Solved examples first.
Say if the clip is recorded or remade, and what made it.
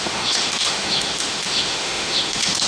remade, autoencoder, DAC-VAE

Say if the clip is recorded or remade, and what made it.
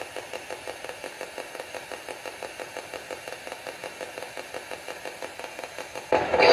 recorded